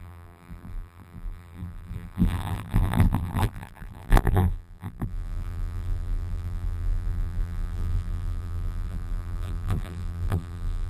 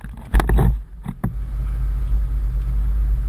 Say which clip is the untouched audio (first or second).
second